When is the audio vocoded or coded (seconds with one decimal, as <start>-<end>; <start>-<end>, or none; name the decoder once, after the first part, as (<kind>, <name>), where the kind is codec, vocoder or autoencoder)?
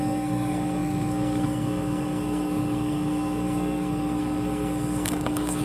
0.0-5.6 (codec, SNAC)